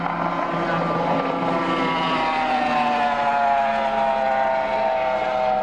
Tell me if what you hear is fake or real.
real